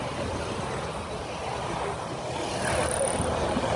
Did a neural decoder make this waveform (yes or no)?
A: no